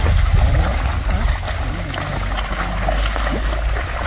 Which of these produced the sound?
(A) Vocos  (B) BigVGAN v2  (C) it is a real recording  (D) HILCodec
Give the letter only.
C